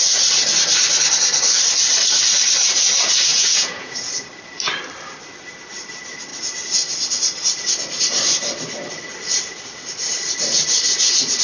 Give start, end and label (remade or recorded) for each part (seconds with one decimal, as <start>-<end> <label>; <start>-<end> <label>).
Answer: 0.0-3.3 recorded; 3.3-4.1 remade; 4.1-11.4 recorded